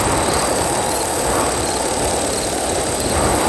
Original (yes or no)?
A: yes